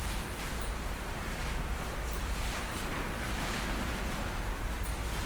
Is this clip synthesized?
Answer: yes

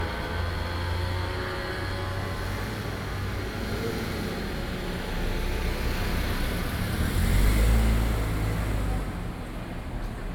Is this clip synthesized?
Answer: no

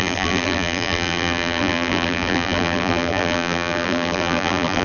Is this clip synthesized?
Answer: yes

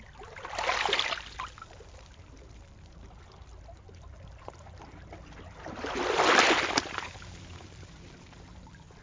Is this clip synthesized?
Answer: yes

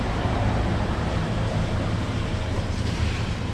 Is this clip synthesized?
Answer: yes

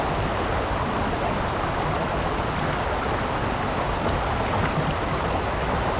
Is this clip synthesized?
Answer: no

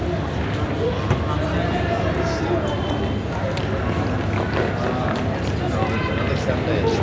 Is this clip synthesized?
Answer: no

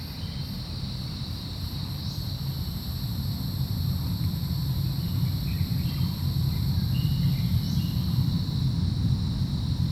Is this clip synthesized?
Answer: yes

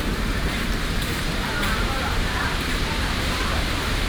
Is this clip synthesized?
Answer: yes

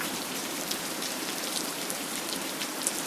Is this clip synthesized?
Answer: yes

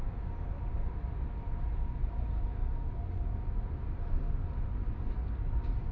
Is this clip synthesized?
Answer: no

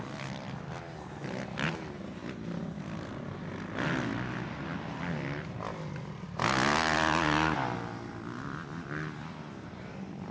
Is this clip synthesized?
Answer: no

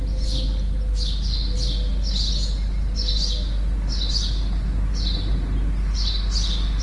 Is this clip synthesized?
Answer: no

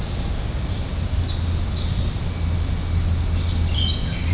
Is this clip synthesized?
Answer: no